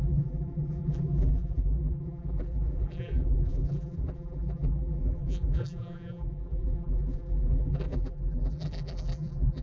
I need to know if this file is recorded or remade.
remade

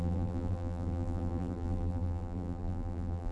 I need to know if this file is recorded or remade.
remade